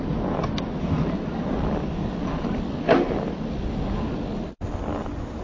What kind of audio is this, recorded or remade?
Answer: recorded